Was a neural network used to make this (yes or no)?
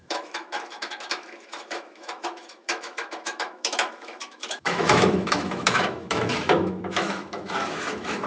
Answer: yes